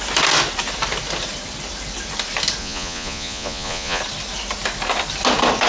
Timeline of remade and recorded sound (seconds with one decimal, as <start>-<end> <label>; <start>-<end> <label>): 0.0-2.6 recorded; 2.6-4.0 remade; 4.0-5.7 recorded